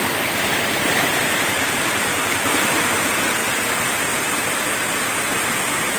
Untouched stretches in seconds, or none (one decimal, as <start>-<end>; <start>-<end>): 0.0-3.4; 4.5-5.3